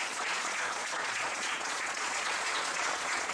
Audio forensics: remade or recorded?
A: remade